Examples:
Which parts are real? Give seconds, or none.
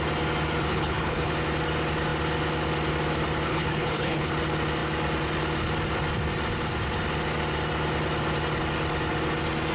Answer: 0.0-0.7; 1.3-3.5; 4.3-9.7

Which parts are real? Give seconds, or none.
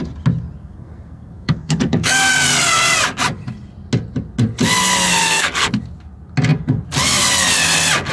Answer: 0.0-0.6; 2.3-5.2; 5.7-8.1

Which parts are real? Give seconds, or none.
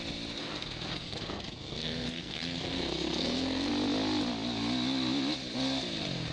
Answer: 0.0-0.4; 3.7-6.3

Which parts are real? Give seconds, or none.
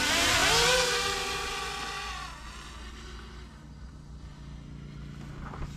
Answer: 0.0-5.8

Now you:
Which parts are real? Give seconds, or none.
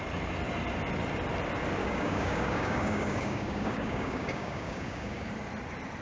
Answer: 0.0-1.8; 5.3-6.0